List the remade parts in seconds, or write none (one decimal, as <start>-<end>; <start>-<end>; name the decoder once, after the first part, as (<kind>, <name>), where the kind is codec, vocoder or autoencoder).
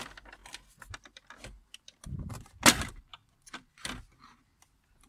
none